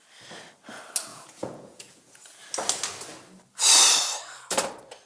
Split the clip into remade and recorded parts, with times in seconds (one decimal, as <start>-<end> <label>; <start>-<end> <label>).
0.0-1.1 recorded; 1.1-2.4 remade; 2.4-5.1 recorded